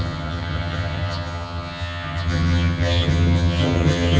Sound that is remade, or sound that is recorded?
remade